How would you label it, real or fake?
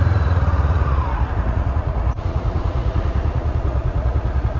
fake